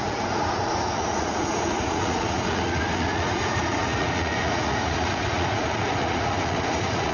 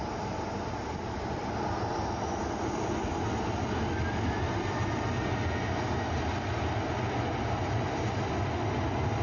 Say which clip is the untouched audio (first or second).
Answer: second